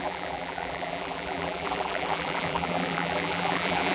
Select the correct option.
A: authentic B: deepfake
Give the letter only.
B